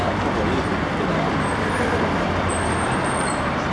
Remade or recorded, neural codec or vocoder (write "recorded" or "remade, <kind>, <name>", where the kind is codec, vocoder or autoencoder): recorded